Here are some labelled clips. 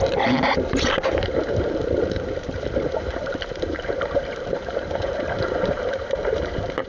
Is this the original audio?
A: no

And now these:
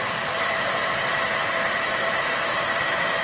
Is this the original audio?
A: yes